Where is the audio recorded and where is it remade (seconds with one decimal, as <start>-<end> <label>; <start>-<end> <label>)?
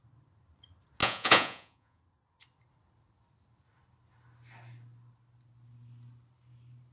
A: 0.0-1.0 recorded; 1.0-2.0 remade; 2.0-6.9 recorded